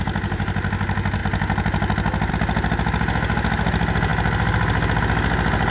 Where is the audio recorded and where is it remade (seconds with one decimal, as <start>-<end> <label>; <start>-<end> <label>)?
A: 0.0-5.7 recorded